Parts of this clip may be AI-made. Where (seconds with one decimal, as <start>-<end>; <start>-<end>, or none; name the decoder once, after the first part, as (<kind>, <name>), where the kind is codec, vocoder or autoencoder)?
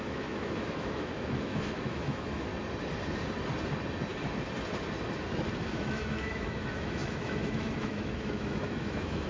0.0-2.5 (autoencoder, DAC-VAE); 5.6-9.3